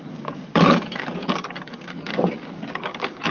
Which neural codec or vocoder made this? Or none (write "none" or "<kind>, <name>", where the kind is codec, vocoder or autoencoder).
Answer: codec, DAC